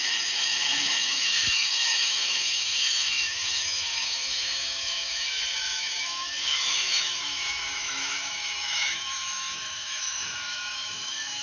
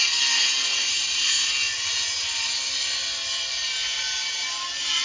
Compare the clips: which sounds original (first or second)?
second